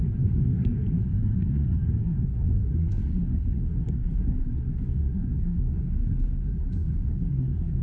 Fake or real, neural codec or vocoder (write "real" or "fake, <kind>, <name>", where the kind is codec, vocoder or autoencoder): fake, codec, SNAC